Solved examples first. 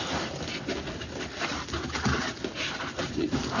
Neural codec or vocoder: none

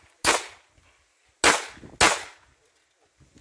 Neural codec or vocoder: none